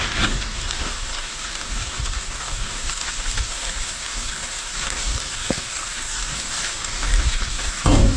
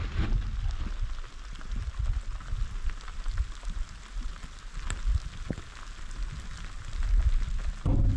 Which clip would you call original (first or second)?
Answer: second